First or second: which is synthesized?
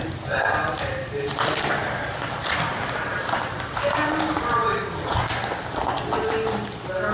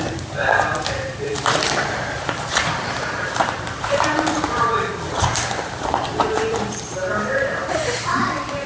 second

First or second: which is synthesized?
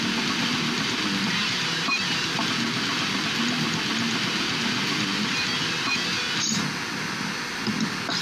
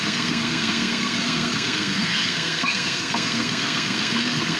second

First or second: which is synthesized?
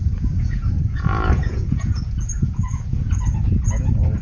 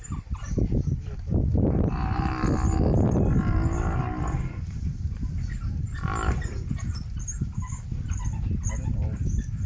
first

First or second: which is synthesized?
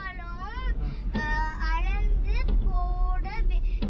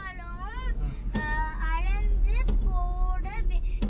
first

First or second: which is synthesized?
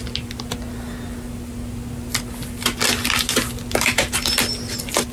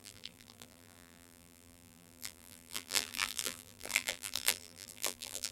second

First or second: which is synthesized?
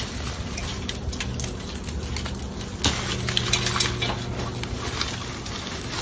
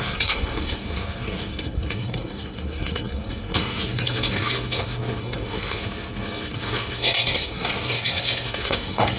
second